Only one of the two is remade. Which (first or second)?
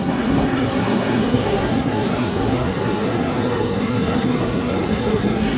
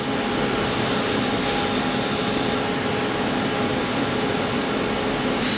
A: first